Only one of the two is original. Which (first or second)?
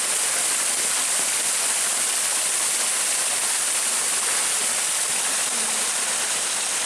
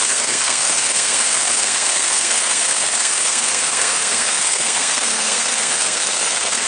first